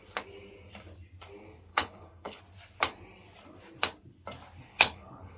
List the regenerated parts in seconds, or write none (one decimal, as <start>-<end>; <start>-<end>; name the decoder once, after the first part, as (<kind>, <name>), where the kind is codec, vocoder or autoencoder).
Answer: 1.7-2.4 (codec, HILCodec); 4.7-5.4